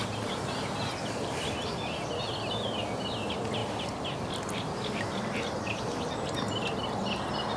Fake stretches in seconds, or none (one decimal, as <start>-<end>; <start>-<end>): none